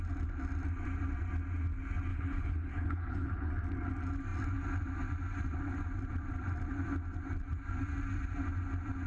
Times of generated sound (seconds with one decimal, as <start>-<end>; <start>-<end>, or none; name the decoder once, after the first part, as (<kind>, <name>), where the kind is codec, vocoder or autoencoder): 2.1-3.5 (codec, HILCodec)